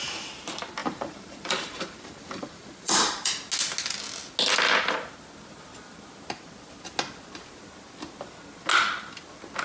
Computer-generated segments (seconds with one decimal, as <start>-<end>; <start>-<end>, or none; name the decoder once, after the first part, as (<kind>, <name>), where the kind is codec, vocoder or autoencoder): 0.8-3.5 (vocoder, BigVGAN v2)